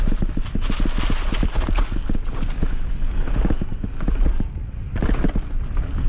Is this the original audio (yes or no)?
yes